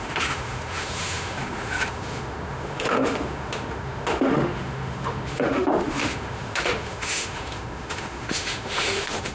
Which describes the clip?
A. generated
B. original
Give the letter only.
A